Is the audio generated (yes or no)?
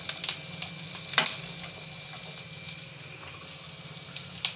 no